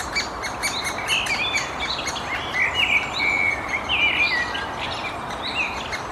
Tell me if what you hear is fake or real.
real